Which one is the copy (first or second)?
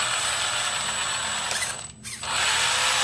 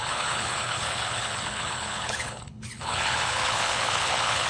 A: second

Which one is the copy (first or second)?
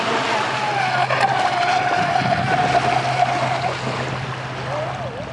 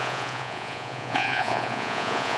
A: second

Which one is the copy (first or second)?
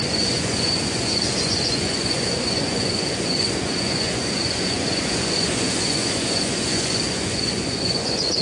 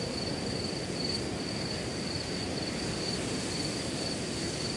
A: first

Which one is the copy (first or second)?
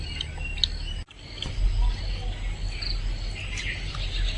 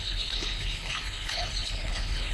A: second